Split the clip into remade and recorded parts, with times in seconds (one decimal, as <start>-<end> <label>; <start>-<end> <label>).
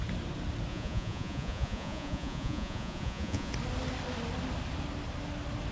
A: 0.0-0.7 recorded; 0.7-3.5 remade; 3.5-5.7 recorded